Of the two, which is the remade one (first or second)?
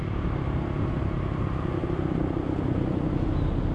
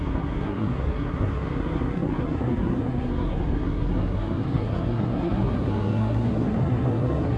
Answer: second